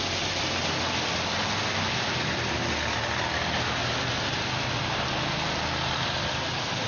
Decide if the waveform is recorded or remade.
recorded